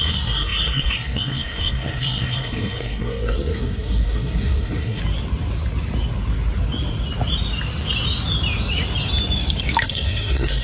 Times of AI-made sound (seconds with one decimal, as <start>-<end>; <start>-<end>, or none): 0.0-5.0; 9.8-10.6